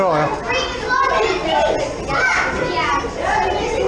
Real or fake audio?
real